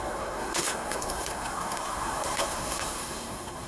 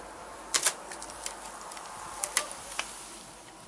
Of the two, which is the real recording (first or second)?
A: second